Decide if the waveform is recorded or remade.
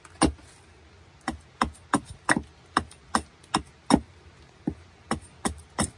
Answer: recorded